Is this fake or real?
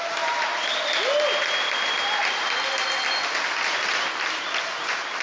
real